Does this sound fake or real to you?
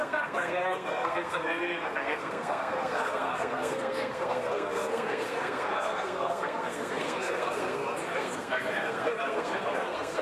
fake